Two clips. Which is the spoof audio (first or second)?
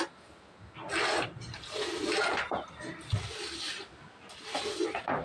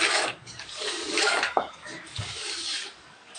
second